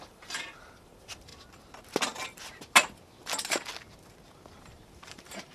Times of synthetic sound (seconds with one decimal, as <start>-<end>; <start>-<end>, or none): 0.0-1.3; 4.6-5.5